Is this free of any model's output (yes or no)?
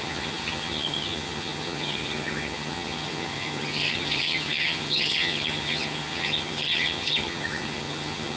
no